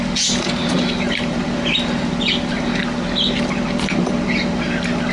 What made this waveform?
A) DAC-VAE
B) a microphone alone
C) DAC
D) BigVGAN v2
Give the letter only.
B